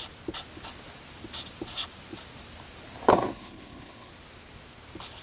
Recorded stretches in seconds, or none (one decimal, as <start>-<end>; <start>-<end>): 0.0-3.1; 4.1-5.2